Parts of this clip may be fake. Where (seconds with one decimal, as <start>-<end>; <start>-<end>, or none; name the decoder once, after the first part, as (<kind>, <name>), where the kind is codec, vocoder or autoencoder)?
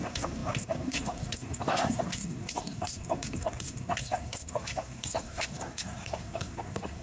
0.0-7.0 (codec, SNAC)